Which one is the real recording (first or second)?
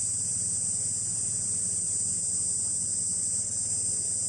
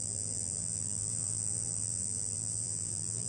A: first